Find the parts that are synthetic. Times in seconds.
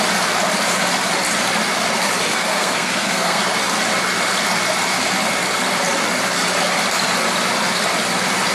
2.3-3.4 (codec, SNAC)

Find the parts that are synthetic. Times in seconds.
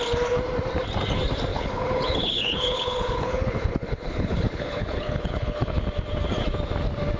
1.5-5.8 (codec, HILCodec)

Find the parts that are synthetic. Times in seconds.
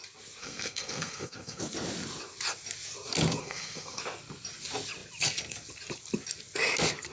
0.4-1.6 (codec, SNAC); 3.4-4.0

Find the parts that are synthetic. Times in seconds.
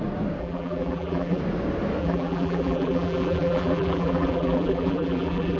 0.4-1.4 (vocoder, BigVGAN v2); 2.0-5.6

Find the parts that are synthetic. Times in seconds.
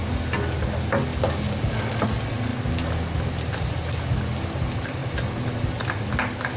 none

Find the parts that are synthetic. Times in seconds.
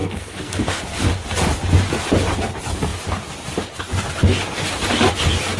0.0-0.8 (codec, SNAC)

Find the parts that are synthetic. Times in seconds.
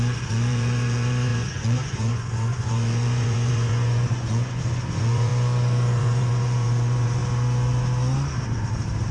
0.0-5.3 (vocoder, Vocos); 6.0-7.2